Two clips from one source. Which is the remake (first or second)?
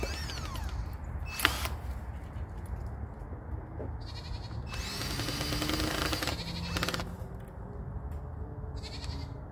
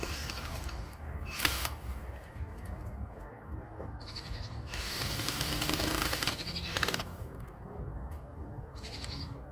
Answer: second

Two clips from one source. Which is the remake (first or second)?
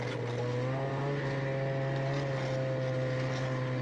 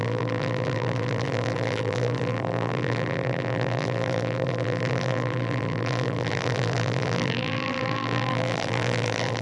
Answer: second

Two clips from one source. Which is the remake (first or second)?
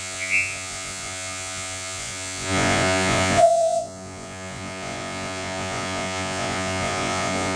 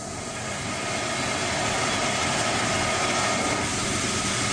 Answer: first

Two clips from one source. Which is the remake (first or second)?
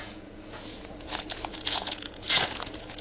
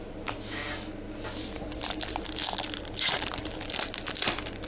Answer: first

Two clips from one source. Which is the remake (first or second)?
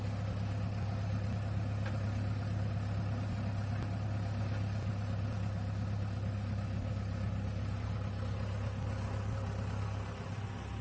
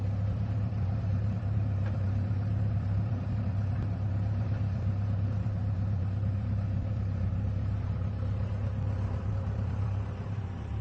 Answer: second